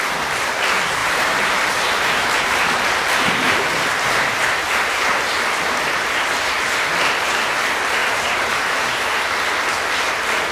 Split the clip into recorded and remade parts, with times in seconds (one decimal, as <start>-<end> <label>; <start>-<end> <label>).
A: 0.0-1.0 recorded; 1.0-5.5 remade; 5.5-8.0 recorded; 8.0-9.3 remade; 9.3-10.5 recorded